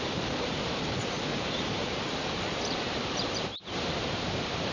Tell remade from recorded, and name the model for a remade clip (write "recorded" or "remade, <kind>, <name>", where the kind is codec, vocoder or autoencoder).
remade, vocoder, BigVGAN v2